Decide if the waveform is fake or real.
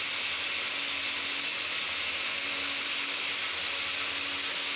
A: real